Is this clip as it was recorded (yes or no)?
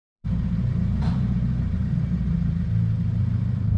no